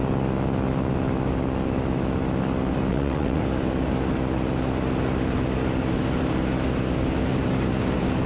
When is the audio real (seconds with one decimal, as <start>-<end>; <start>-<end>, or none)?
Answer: 0.0-2.9; 3.4-8.3